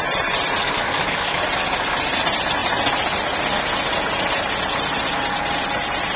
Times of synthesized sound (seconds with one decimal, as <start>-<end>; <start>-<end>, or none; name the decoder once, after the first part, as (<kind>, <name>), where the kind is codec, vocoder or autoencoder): 0.6-1.4 (codec, DAC)